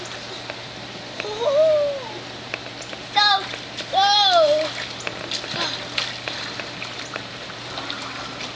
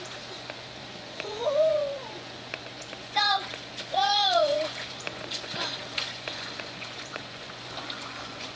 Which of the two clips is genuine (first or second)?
first